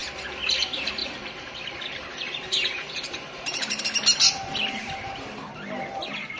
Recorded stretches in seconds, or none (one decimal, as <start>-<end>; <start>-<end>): 0.0-1.0; 3.8-6.4